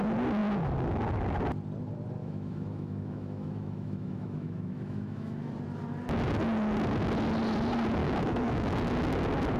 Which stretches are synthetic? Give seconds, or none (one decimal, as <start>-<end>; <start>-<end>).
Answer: 2.2-5.5; 8.0-8.9